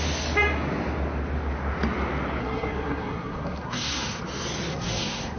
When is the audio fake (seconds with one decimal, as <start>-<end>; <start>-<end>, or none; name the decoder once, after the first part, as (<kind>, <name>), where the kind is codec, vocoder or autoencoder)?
2.4-4.2 (codec, SNAC); 4.7-5.4